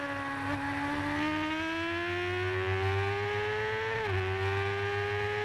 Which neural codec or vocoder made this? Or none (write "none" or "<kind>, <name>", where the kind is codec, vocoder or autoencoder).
none